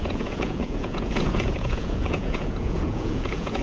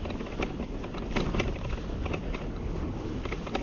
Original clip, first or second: second